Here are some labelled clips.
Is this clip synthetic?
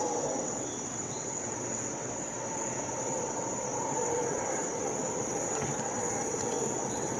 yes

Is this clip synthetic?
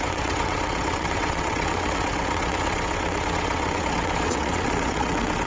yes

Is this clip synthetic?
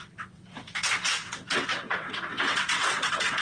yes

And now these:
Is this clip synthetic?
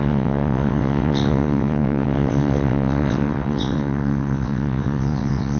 yes